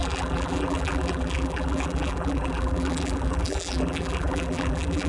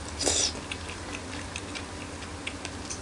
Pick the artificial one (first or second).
first